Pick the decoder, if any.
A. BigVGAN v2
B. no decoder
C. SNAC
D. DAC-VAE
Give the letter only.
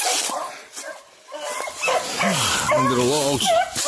B